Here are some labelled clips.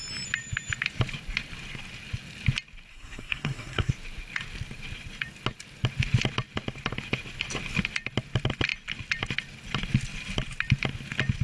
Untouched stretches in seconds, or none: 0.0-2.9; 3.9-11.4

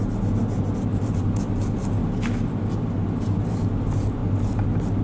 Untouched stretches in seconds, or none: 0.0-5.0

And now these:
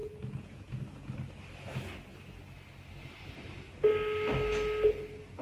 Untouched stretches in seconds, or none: 0.8-5.4